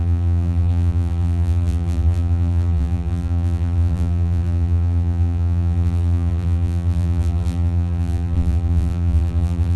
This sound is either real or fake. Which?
fake